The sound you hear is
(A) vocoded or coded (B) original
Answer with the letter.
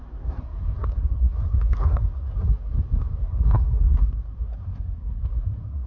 A